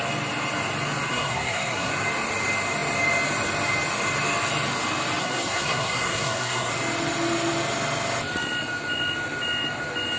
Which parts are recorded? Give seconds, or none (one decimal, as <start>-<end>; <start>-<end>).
0.0-1.1; 1.9-5.2; 6.7-10.2